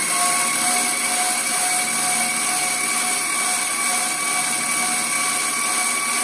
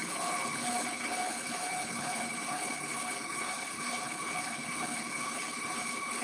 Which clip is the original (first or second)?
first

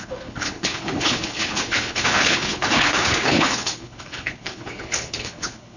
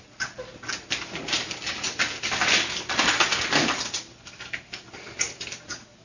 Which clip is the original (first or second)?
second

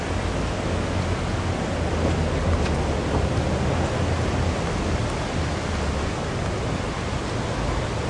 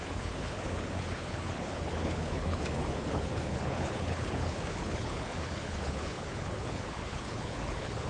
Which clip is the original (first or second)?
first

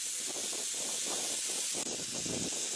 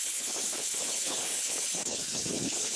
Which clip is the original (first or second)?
first